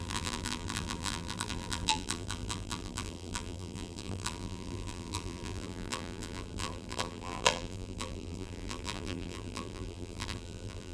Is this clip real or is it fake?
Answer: fake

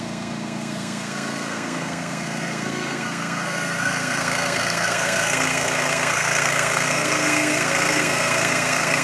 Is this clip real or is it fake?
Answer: fake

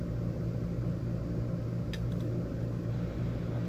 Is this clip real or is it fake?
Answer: real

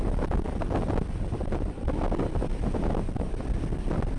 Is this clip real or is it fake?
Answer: real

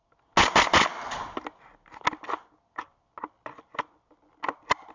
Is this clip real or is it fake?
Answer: real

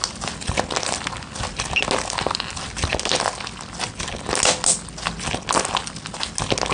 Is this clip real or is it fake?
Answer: real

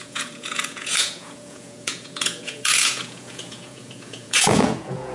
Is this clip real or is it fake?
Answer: fake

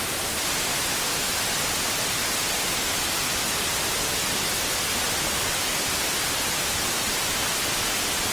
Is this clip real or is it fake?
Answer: real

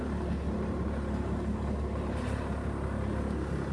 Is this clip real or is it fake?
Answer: real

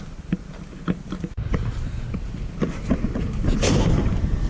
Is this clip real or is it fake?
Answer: real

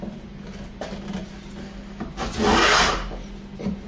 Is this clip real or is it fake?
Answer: real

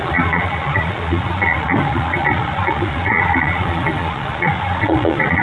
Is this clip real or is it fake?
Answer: fake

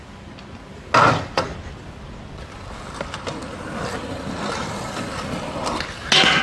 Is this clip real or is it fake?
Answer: real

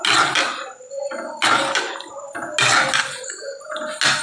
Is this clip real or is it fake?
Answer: real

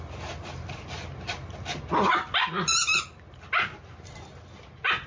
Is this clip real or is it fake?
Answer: real